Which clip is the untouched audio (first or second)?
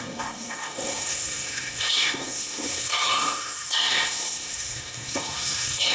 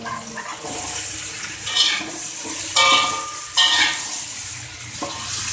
second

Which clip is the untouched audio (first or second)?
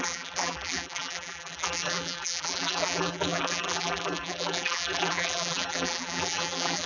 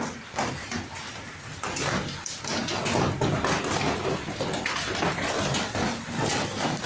second